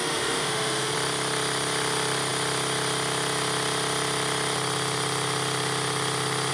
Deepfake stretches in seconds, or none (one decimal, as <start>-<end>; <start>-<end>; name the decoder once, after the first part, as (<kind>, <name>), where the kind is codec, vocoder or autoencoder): 0.0-0.9 (autoencoder, DAC-VAE)